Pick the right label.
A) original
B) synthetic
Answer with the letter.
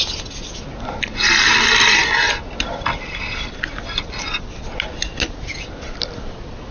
A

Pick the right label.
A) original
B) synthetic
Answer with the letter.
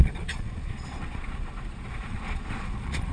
B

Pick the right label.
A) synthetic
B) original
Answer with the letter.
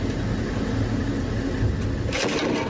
B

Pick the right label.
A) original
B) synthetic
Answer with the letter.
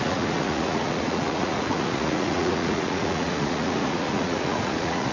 B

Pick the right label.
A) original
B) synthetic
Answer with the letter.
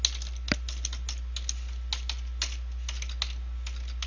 A